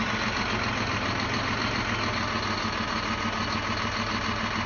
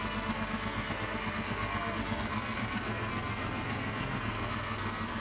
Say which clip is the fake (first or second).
second